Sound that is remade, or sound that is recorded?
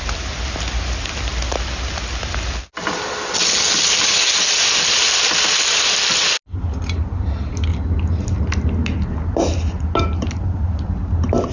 recorded